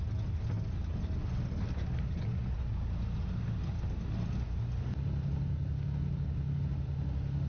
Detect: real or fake real